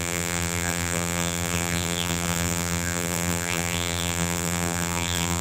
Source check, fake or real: fake